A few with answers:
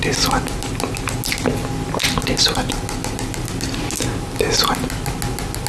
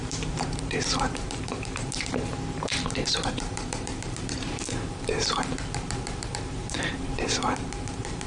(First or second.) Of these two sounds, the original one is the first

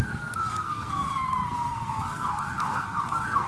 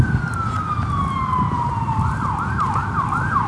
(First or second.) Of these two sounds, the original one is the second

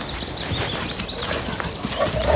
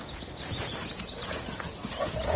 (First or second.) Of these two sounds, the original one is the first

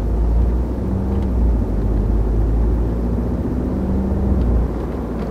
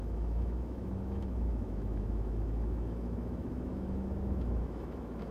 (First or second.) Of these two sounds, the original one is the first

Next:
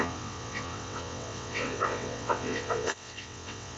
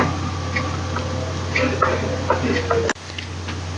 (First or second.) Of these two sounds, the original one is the second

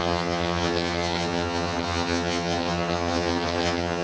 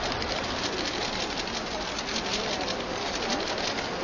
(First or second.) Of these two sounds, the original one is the second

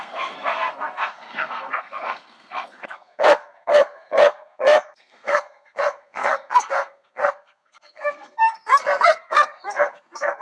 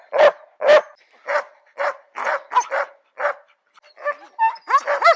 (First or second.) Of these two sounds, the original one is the second